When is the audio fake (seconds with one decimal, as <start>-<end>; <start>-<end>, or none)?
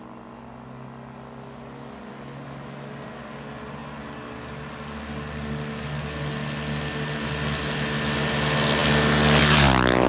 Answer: none